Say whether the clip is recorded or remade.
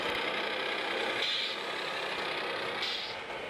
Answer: recorded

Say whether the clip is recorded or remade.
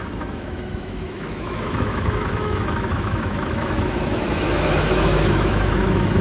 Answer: remade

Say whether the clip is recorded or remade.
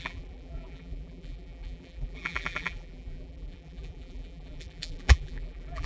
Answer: remade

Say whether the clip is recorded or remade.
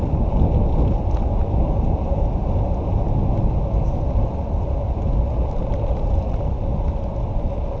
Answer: recorded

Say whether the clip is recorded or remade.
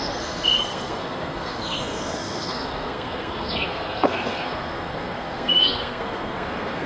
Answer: remade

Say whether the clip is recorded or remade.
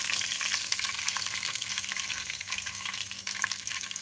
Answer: remade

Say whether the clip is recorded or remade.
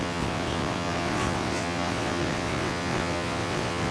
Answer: remade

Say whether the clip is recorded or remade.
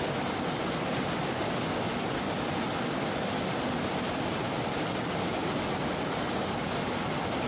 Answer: recorded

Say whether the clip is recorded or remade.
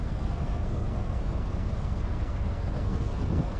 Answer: remade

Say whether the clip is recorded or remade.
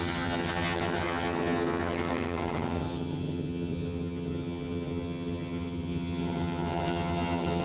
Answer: remade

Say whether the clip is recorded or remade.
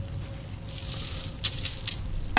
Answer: recorded